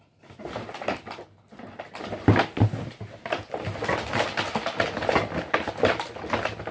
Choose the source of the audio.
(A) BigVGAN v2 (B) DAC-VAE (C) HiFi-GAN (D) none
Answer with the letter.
D